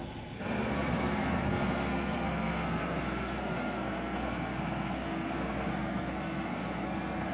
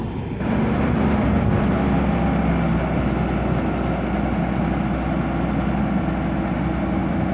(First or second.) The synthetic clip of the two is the first